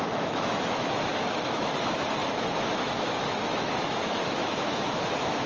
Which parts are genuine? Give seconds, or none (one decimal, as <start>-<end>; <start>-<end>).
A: none

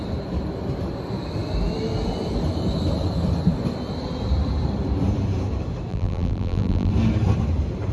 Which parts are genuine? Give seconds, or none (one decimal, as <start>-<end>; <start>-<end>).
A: 0.0-5.9; 6.9-7.9